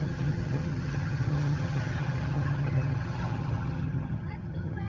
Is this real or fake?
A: fake